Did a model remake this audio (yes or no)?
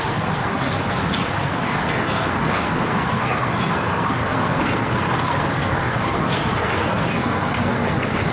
yes